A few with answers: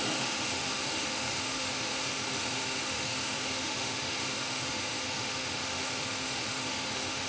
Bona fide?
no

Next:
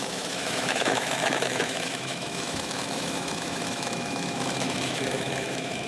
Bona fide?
no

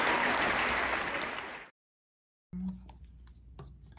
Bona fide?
yes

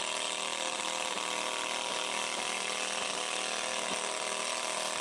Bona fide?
yes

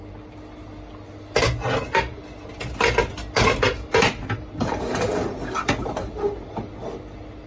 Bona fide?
yes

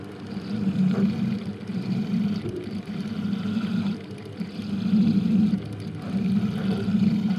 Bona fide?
yes